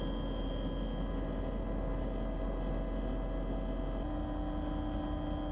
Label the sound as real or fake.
real